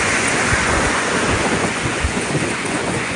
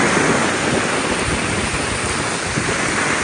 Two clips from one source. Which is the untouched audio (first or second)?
second